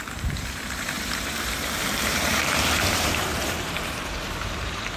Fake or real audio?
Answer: fake